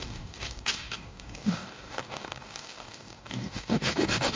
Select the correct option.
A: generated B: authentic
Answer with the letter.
A